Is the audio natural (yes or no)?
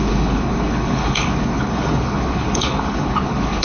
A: no